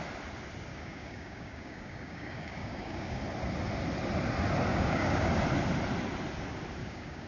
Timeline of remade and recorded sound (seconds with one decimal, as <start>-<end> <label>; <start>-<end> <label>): 0.0-0.7 recorded; 0.7-3.2 remade; 3.2-4.7 recorded; 4.7-5.3 remade; 5.3-6.8 recorded; 6.8-7.3 remade